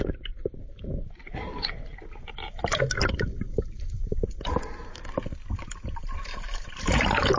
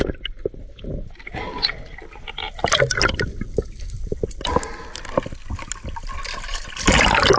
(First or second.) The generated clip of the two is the first